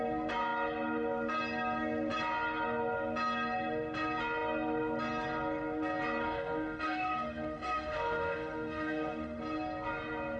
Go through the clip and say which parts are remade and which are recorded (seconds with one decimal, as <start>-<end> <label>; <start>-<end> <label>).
0.0-6.2 recorded; 6.2-9.4 remade; 9.4-10.4 recorded